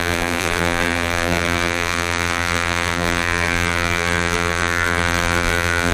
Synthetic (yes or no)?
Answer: yes